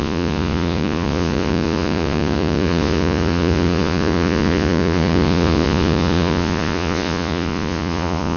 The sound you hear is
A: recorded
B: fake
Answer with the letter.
B